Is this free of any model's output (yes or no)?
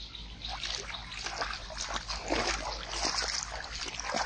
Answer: yes